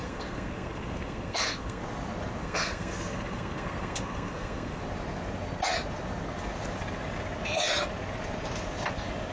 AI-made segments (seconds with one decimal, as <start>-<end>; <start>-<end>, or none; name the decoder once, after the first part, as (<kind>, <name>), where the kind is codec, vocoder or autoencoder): 0.0-1.8 (codec, SNAC); 2.4-4.8